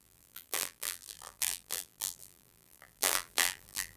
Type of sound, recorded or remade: remade